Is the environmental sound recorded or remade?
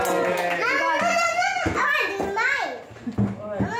recorded